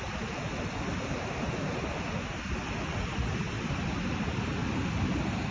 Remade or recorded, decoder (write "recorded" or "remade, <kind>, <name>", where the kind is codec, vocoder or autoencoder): recorded